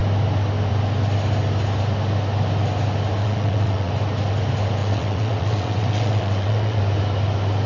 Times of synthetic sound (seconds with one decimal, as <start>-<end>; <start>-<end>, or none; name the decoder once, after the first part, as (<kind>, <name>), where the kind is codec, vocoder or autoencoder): 3.2-3.9 (vocoder, WaveNeXt); 4.8-6.8